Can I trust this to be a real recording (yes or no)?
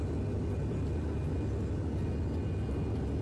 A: yes